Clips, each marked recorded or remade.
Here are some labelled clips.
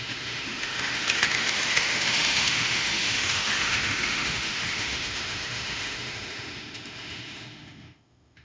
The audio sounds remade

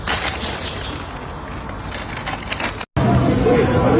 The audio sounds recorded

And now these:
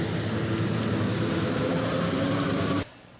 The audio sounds recorded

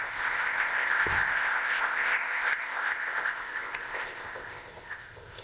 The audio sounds remade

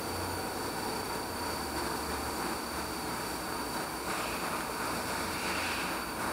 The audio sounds recorded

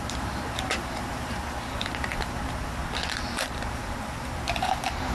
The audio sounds remade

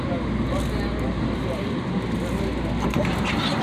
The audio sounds recorded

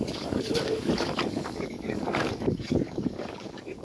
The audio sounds remade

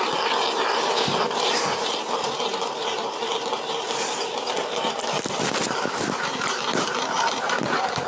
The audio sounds remade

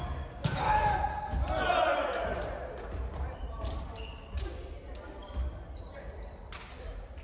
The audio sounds recorded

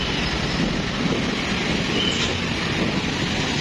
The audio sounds recorded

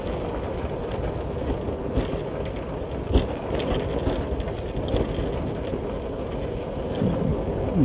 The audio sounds recorded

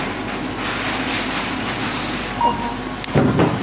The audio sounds recorded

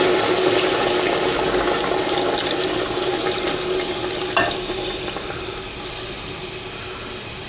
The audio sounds recorded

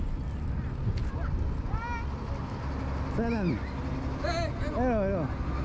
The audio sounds recorded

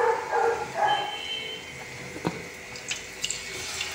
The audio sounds recorded